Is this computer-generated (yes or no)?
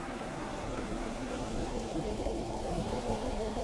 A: yes